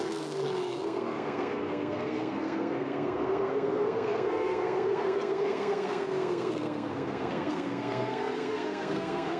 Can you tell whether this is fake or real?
fake